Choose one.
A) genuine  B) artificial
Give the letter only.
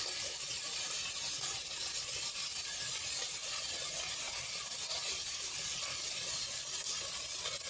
A